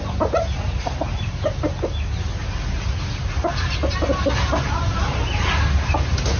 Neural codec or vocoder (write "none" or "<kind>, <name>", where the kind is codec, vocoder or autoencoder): none